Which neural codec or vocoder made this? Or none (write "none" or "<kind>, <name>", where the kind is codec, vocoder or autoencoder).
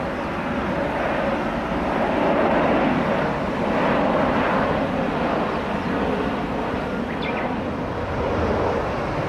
none